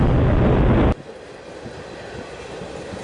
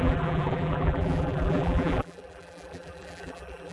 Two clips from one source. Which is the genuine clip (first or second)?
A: first